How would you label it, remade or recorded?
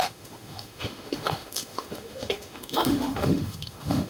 remade